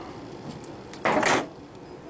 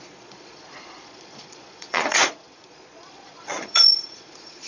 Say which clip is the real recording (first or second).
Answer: first